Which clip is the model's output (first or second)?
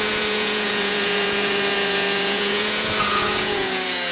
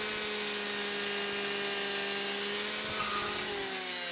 first